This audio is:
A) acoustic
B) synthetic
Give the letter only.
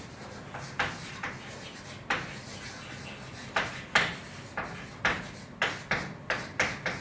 A